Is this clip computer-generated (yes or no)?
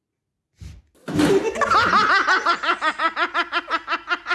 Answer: no